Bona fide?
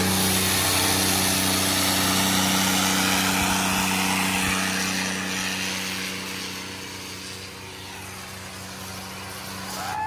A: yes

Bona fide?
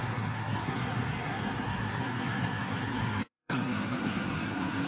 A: no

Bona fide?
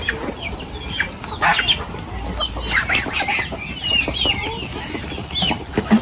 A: yes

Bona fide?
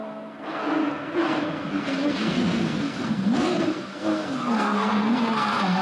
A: no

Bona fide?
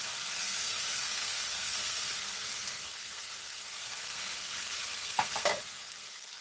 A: no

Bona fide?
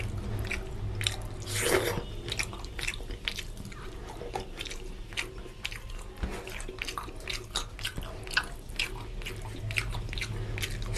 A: yes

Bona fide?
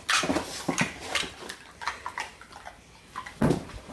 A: yes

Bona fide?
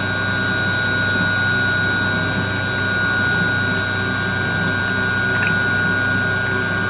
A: yes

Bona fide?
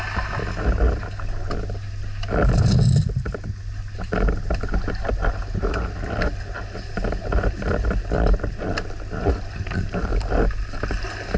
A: yes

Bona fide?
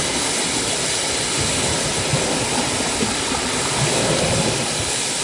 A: yes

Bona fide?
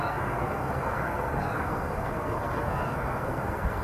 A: no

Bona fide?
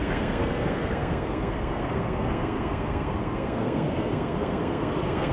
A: no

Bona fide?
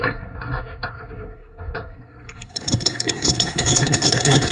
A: no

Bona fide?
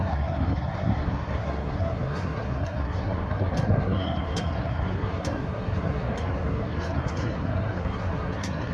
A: no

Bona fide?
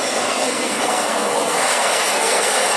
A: no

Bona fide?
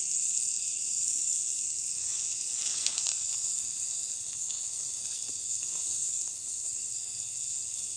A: no